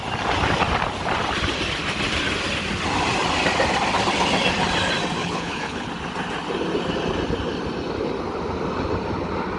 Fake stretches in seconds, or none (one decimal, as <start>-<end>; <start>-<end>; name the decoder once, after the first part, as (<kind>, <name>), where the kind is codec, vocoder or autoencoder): 5.2-5.9 (codec, HILCodec)